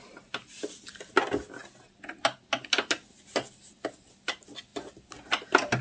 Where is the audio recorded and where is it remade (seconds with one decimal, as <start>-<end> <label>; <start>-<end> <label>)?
0.0-5.8 recorded